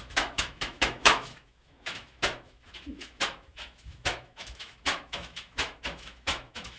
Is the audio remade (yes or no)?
yes